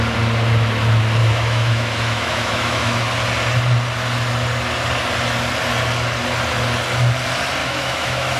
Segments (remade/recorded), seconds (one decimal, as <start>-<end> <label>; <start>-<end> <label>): 0.0-1.2 recorded; 1.2-3.0 remade; 3.0-7.6 recorded; 7.6-8.4 remade